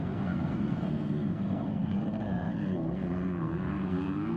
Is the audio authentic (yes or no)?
no